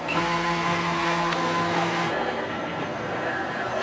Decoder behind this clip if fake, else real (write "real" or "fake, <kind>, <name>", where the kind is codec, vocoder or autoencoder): fake, codec, SNAC